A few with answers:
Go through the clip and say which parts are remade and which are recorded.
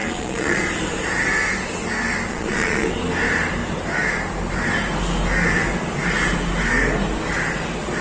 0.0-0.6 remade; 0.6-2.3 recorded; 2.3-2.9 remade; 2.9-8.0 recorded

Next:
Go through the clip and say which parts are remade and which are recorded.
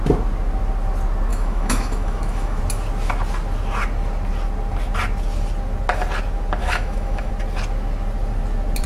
0.0-1.3 recorded; 1.3-2.6 remade; 2.6-6.6 recorded; 6.6-7.3 remade; 7.3-8.9 recorded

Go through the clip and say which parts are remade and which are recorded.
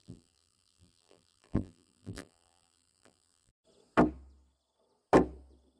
0.0-3.5 remade; 3.5-5.8 recorded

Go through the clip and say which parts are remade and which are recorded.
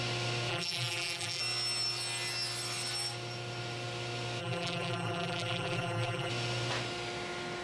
0.0-0.5 recorded; 0.5-1.4 remade; 1.4-4.4 recorded; 4.4-6.3 remade; 6.3-7.6 recorded